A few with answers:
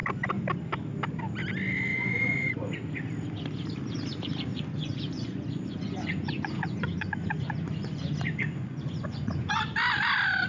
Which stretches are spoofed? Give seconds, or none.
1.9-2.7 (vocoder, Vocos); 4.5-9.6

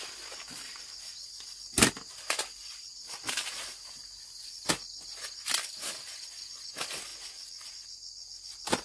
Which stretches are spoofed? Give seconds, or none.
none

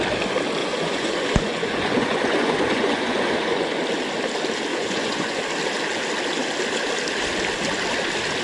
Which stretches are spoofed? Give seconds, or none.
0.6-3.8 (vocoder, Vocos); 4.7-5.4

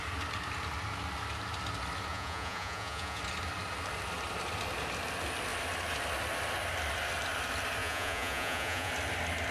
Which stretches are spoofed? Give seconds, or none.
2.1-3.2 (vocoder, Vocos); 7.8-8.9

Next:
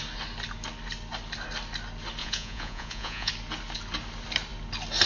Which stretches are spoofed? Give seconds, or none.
2.2-3.3 (vocoder, Vocos)

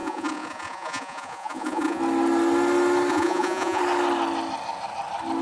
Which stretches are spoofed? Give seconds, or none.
0.0-2.0 (vocoder, Vocos); 3.1-3.8

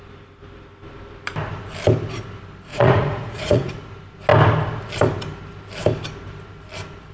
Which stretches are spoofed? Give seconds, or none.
2.7-3.7 (vocoder, Vocos)